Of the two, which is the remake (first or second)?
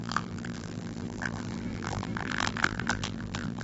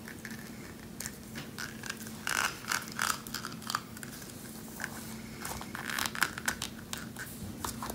first